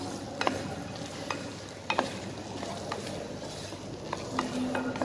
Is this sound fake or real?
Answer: real